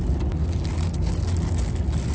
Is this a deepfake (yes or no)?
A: no